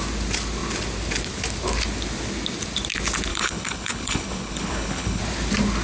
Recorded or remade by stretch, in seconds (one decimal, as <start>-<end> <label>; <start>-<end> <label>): 0.0-3.3 recorded; 3.3-5.2 remade; 5.2-5.8 recorded